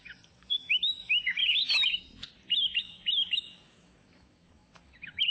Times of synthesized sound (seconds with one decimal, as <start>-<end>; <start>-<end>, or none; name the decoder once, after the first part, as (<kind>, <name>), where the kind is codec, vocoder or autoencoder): 0.0-1.4 (autoencoder, DAC-VAE); 2.8-5.3